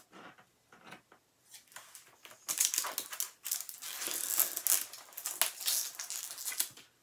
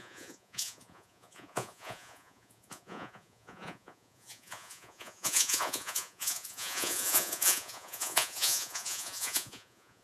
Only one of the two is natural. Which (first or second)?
first